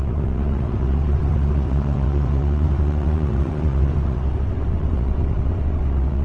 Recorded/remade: remade